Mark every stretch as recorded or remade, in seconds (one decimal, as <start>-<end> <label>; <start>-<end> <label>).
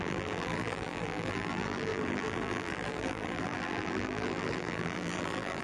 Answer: 0.0-5.6 remade